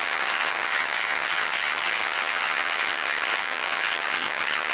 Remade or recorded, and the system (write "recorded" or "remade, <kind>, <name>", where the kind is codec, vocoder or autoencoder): remade, vocoder, HiFi-GAN